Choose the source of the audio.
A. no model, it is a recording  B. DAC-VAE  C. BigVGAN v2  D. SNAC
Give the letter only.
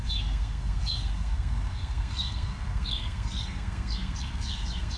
D